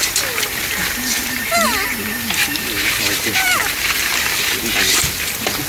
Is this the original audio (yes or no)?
no